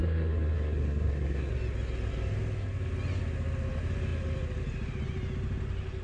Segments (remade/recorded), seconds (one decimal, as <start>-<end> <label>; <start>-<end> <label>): 0.0-1.5 remade; 1.5-6.0 recorded